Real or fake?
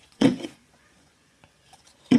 fake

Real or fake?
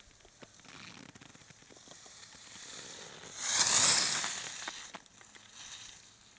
real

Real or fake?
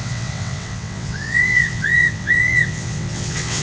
fake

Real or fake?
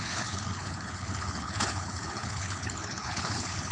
fake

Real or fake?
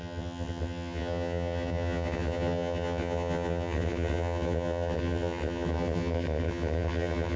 fake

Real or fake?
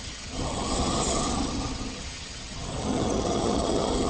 fake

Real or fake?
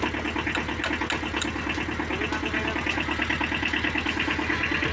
real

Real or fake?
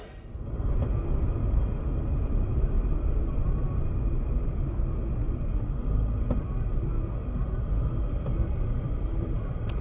real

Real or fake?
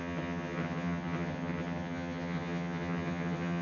fake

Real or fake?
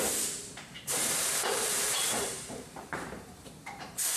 fake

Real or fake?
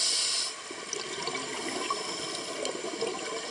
real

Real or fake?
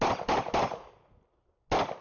real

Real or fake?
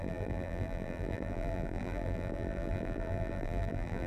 fake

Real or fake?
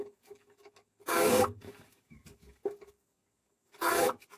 fake